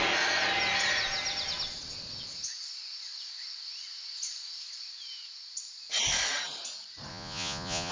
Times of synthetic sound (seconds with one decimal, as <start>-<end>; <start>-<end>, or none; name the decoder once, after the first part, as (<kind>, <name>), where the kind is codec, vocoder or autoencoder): 7.1-7.9 (vocoder, Vocos)